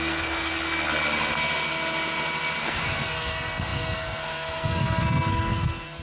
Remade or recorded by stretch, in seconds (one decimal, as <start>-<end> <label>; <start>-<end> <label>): 0.0-0.5 remade; 0.5-2.6 recorded; 2.6-6.0 remade